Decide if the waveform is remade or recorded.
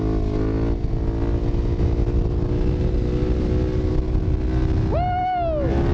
recorded